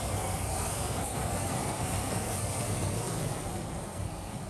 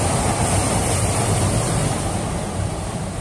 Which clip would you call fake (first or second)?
first